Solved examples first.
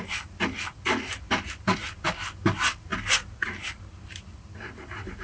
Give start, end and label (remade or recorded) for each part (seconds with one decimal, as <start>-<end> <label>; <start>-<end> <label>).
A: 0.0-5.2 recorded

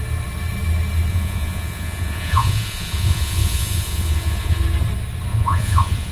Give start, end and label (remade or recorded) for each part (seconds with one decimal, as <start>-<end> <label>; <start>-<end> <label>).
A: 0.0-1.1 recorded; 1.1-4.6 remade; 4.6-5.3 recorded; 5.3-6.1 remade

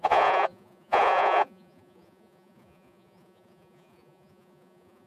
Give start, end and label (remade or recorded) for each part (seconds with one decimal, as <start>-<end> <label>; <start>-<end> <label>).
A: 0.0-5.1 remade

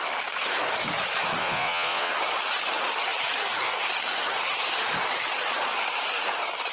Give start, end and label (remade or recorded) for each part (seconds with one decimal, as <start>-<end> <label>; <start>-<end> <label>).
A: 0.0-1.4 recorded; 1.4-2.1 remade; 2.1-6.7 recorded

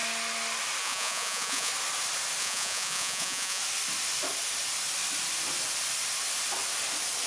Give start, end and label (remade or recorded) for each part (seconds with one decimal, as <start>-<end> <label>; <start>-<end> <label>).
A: 0.0-0.8 recorded; 0.8-1.7 remade; 1.7-2.4 recorded; 2.4-3.6 remade; 3.6-7.3 recorded